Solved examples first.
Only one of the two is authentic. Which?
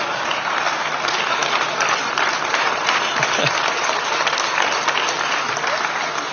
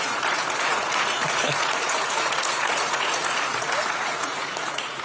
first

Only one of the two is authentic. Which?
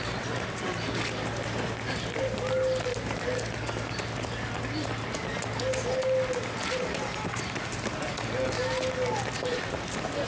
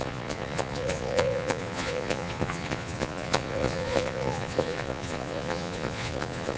first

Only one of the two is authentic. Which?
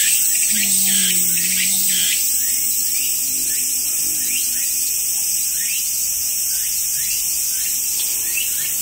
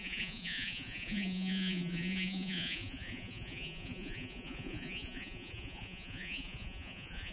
first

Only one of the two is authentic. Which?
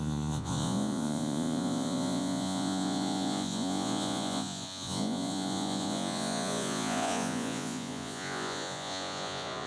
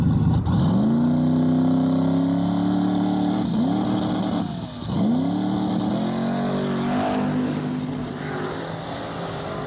second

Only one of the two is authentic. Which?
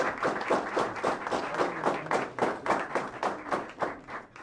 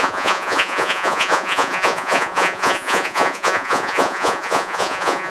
first